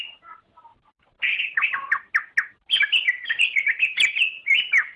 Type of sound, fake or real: real